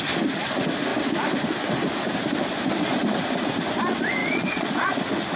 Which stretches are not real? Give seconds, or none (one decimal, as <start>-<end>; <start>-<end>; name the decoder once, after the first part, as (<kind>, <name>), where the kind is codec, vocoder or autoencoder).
4.2-4.9 (vocoder, Vocos)